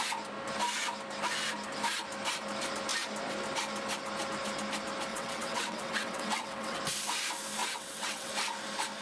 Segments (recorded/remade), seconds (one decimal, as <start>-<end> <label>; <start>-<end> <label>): 0.0-5.1 recorded; 5.1-6.8 remade; 6.8-7.6 recorded; 7.6-8.3 remade; 8.3-9.0 recorded